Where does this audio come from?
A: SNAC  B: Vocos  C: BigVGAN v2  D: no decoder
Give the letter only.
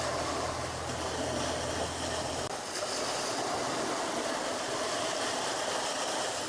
D